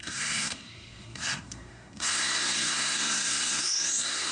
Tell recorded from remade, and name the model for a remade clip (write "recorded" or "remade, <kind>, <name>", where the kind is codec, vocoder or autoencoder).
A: remade, codec, SNAC